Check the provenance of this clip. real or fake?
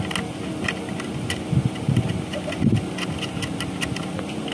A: real